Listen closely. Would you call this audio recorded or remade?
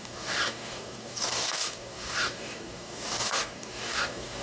remade